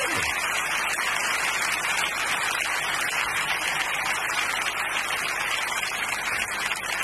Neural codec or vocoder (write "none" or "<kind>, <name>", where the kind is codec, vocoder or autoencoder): none